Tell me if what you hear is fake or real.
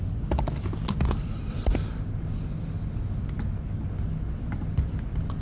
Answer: real